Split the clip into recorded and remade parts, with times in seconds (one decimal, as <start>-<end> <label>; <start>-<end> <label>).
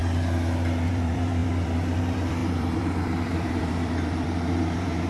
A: 0.0-0.9 recorded; 0.9-5.1 remade